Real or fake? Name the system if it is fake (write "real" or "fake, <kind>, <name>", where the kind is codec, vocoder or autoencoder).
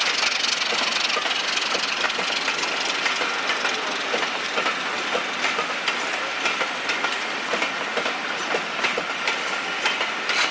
real